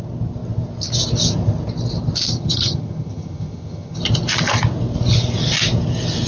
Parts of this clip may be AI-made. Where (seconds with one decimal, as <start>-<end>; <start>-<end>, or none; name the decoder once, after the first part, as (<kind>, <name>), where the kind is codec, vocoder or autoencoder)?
2.3-4.0 (vocoder, HiFi-GAN)